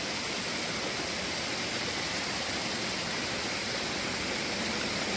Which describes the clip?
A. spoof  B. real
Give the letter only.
B